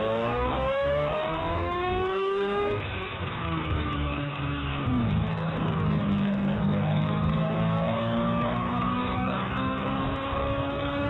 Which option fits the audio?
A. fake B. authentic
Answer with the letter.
A